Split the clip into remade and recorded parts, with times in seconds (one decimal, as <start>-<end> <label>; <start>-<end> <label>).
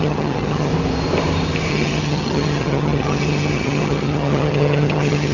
0.0-0.7 remade; 0.7-1.7 recorded; 1.7-5.3 remade